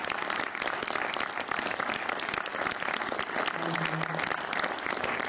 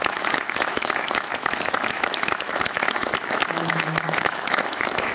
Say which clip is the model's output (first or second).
second